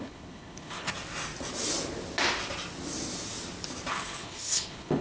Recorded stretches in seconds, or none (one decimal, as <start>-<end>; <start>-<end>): 0.9-3.9